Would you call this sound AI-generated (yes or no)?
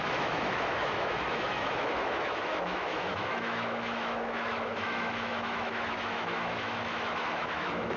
yes